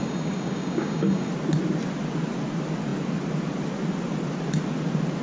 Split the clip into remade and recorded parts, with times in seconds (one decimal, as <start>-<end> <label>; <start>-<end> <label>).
0.0-1.3 remade; 1.3-5.2 recorded